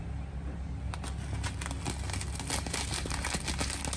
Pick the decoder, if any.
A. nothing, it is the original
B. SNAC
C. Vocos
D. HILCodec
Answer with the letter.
A